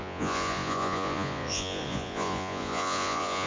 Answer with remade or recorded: remade